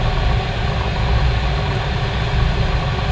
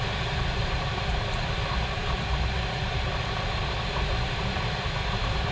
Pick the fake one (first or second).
second